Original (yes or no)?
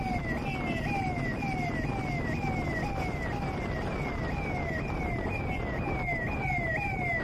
yes